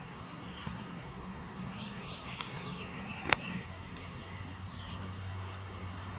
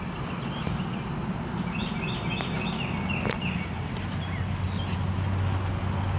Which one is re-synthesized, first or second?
first